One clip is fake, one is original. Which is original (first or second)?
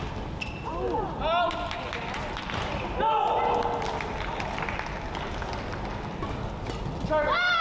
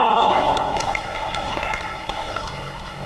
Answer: first